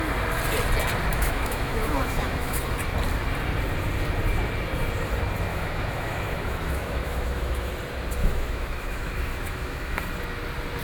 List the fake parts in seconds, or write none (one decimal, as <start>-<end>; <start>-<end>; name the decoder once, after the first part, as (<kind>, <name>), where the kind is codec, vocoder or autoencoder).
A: 1.1-2.6 (autoencoder, DAC-VAE); 5.5-7.7; 8.2-10.0